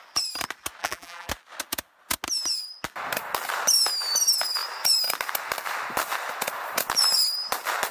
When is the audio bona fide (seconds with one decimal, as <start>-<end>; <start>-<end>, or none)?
0.0-0.8; 1.3-7.9